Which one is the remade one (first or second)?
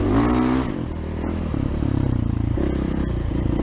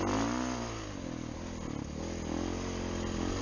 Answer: first